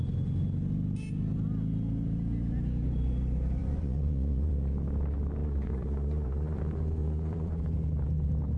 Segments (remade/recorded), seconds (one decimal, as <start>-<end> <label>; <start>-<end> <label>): 0.0-3.6 recorded; 3.6-4.5 remade; 4.5-5.4 recorded; 5.4-6.6 remade; 6.6-7.0 recorded; 7.0-7.6 remade; 7.6-8.6 recorded

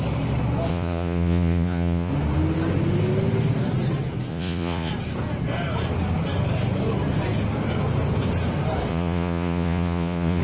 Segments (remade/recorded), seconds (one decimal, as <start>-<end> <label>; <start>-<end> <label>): 0.0-0.7 recorded; 0.7-2.1 remade; 2.1-4.3 recorded; 4.3-4.9 remade; 4.9-8.9 recorded; 8.9-10.4 remade

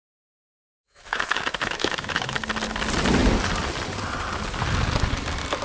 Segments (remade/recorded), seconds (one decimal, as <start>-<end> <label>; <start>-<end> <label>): 0.0-0.4 recorded; 0.4-2.4 remade; 2.4-5.6 recorded

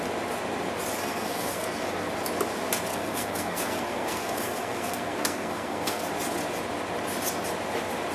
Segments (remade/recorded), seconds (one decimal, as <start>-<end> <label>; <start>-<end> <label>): 0.0-1.0 recorded; 1.0-2.1 remade; 2.1-2.9 recorded; 2.9-6.1 remade; 6.1-8.1 recorded

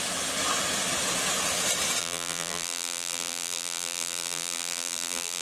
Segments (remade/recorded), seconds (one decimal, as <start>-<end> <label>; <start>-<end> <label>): 0.0-2.0 recorded; 2.0-5.4 remade